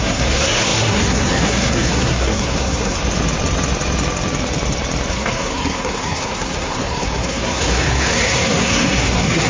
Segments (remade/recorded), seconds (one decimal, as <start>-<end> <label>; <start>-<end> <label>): 0.0-3.0 remade; 3.0-5.1 recorded; 5.1-9.5 remade